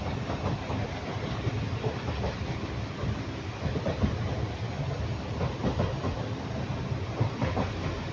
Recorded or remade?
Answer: recorded